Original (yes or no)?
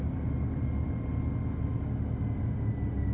yes